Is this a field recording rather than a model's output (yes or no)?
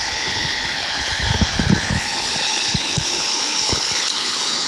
no